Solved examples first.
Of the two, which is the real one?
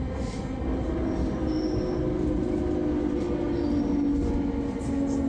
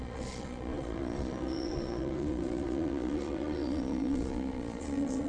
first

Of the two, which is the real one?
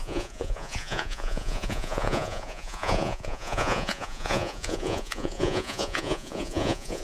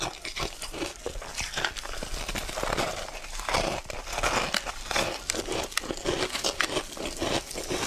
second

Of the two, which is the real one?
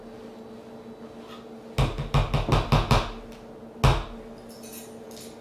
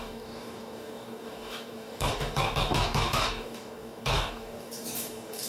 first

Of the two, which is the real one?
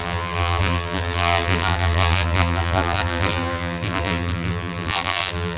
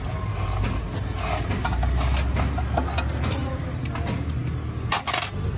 second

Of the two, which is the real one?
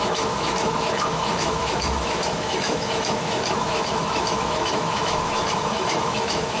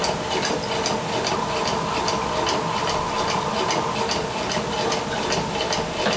second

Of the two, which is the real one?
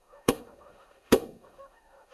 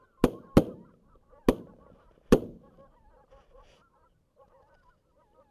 second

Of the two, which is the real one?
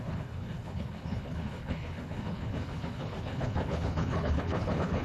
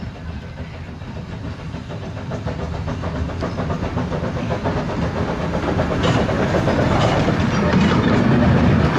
second